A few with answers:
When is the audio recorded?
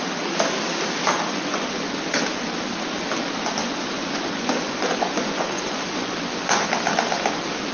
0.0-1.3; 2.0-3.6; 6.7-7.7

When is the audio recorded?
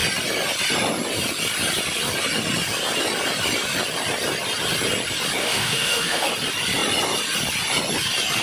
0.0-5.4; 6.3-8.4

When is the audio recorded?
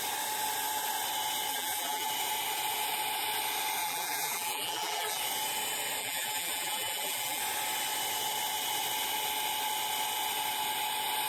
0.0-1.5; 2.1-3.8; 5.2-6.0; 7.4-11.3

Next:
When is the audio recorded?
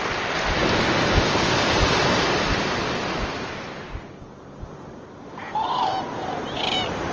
0.6-1.4; 3.0-3.5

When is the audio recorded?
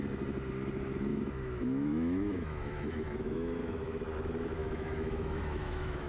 0.0-1.1; 4.0-4.6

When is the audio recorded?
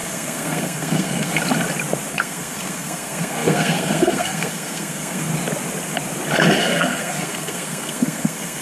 1.3-2.1; 5.3-6.6